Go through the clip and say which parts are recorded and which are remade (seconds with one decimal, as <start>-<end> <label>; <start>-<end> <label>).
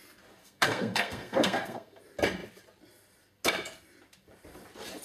0.0-0.4 recorded; 0.4-2.0 remade; 2.0-5.0 recorded